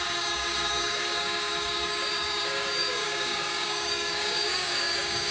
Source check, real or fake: fake